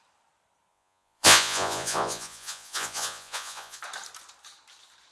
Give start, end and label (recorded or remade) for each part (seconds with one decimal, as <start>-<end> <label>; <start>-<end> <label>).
0.0-0.7 recorded; 0.7-3.8 remade; 3.8-5.1 recorded